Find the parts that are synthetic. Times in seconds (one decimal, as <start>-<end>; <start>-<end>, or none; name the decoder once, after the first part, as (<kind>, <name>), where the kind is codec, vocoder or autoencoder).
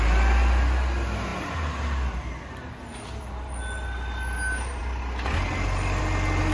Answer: none